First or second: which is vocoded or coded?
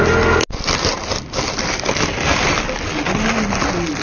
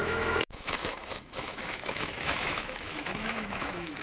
second